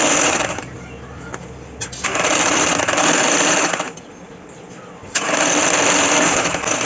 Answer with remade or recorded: recorded